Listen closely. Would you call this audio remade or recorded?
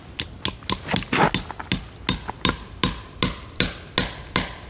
recorded